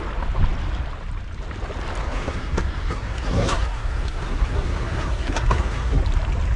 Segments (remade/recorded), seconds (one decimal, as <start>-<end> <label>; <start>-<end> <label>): 0.0-2.0 recorded; 2.0-6.0 remade; 6.0-6.6 recorded